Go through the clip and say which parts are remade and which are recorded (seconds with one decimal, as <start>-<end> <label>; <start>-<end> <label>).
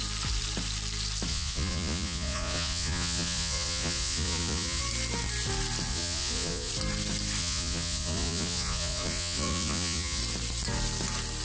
0.0-1.3 recorded; 1.3-4.8 remade; 4.8-5.9 recorded; 5.9-6.7 remade; 6.7-7.4 recorded; 7.4-10.2 remade; 10.2-11.4 recorded